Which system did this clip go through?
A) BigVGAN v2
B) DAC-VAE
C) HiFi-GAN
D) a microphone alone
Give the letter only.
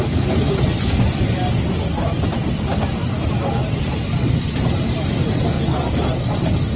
D